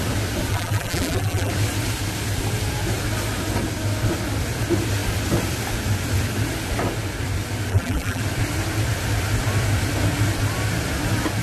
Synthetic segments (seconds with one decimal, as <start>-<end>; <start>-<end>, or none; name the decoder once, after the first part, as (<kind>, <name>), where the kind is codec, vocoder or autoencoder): 0.5-1.5 (vocoder, BigVGAN v2); 7.7-8.2